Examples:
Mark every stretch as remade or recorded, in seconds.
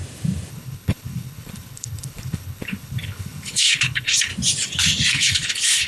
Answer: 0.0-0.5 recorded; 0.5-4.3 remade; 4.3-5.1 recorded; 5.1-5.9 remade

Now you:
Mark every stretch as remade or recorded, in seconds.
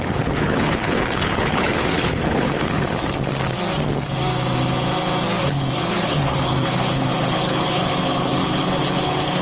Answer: 0.0-3.3 remade; 3.3-5.4 recorded; 5.4-9.4 remade